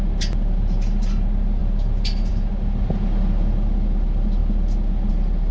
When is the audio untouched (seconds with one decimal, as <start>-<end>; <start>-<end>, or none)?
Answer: 0.0-5.5